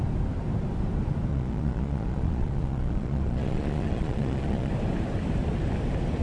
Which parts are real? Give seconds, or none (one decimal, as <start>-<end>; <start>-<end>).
0.0-1.3; 4.7-6.2